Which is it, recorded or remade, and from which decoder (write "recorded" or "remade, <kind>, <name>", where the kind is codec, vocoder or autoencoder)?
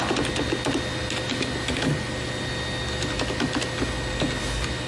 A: recorded